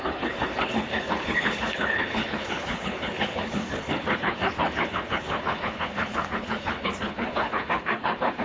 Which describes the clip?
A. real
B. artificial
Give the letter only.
B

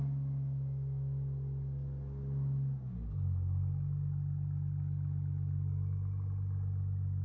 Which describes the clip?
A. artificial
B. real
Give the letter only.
B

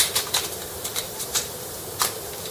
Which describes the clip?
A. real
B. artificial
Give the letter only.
B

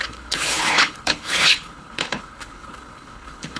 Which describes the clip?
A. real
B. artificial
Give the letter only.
B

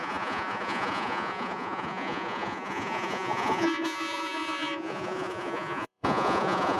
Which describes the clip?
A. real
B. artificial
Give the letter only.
B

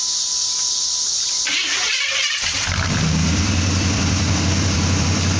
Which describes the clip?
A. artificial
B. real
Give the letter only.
A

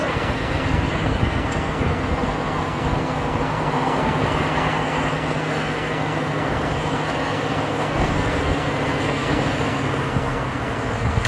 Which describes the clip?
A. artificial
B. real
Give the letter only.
A